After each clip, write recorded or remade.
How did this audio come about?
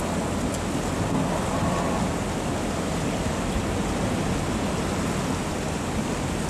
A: recorded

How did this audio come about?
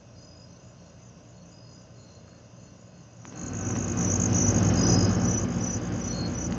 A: recorded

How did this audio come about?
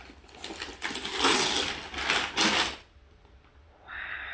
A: recorded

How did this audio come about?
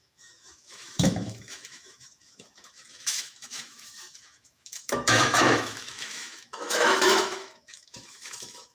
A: remade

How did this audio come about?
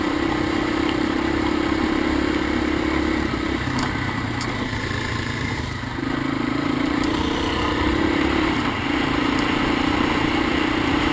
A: remade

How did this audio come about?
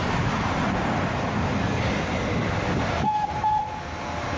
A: recorded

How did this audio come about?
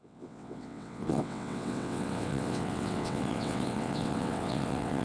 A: remade